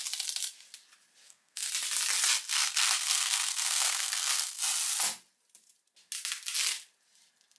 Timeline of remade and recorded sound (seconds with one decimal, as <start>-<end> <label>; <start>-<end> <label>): 0.0-1.2 recorded; 1.2-1.7 remade; 1.7-2.5 recorded; 2.5-4.6 remade; 4.6-7.6 recorded